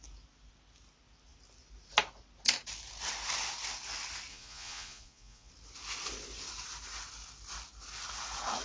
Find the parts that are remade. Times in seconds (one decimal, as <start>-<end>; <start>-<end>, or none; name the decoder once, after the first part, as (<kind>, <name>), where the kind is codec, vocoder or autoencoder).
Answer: 4.3-5.5 (vocoder, Vocos)

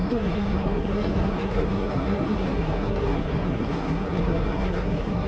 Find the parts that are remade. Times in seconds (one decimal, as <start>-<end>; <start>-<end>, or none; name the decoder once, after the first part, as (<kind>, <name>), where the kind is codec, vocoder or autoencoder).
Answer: 0.0-5.3 (codec, SNAC)

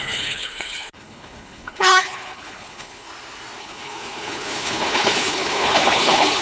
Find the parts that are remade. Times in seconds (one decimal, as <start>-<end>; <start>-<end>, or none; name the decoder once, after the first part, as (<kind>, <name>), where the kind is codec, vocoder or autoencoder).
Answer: 0.0-3.1 (codec, HILCodec); 3.6-6.4

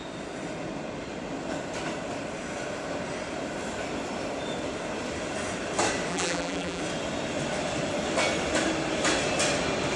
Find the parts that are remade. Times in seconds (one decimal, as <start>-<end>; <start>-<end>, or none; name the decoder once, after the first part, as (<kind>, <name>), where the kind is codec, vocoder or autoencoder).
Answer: 6.1-6.8 (vocoder, BigVGAN v2)

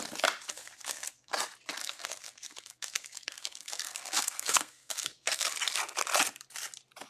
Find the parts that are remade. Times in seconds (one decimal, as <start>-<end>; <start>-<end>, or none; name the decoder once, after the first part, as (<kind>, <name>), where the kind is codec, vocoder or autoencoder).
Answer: 0.5-1.3 (codec, SNAC); 1.8-5.5

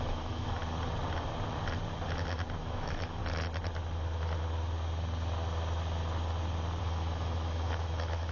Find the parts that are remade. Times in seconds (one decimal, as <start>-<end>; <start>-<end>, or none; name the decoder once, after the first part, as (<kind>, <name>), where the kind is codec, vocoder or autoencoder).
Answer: 0.0-0.6 (autoencoder, DAC-VAE); 2.6-3.2; 6.8-8.3